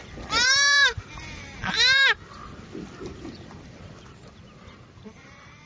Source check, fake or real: fake